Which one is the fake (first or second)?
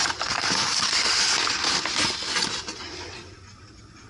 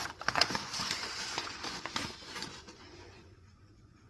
second